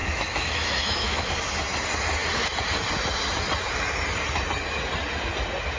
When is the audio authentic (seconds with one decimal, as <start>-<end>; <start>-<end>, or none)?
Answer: 1.3-5.8